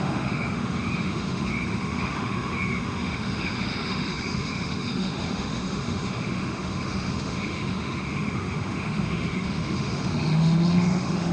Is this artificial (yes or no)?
yes